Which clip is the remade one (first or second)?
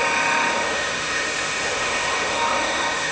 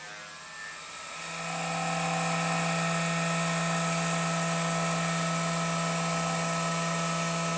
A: first